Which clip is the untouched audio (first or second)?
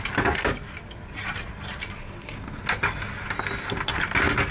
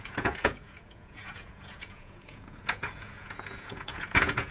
first